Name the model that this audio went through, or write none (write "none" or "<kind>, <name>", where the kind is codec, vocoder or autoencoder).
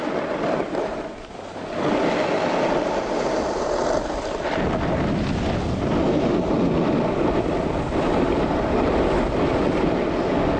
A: none